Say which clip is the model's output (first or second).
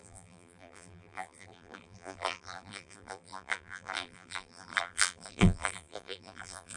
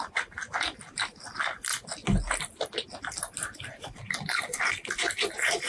first